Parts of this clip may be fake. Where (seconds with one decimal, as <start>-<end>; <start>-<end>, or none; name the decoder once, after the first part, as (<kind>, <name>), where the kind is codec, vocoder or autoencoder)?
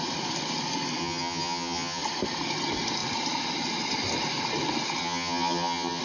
1.0-2.0 (vocoder, HiFi-GAN); 5.0-6.0